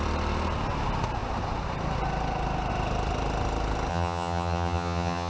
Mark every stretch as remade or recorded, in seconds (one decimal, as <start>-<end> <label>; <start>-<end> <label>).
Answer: 0.0-3.9 recorded; 3.9-5.3 remade